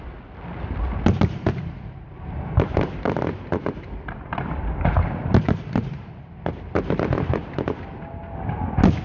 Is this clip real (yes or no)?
no